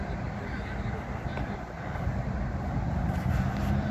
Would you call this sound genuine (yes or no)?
yes